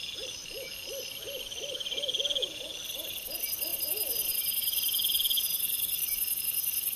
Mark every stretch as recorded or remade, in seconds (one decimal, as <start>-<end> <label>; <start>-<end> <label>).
0.0-7.0 recorded